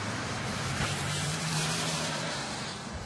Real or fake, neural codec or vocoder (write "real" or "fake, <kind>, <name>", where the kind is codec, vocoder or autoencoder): fake, vocoder, BigVGAN v2